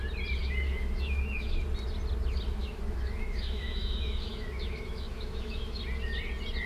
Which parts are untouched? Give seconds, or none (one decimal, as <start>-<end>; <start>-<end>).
0.0-0.4; 1.6-2.6; 5.8-6.7